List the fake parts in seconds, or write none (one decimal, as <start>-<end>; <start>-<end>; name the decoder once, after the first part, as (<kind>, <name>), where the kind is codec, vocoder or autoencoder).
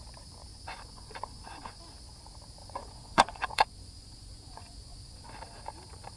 0.5-1.8 (vocoder, Vocos); 2.6-5.3